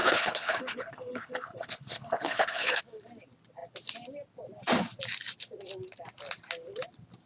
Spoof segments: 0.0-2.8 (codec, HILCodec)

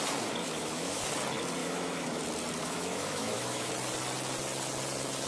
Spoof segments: 0.4-1.0 (autoencoder, DAC-VAE); 1.6-2.2; 2.6-3.7

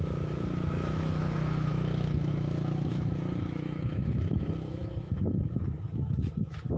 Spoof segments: 0.0-6.8 (autoencoder, DAC-VAE)

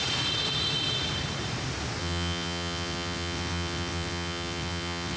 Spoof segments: 2.0-5.2 (vocoder, WaveNeXt)